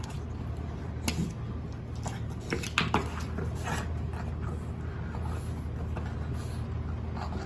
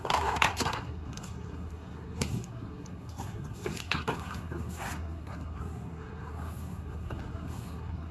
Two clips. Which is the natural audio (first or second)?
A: first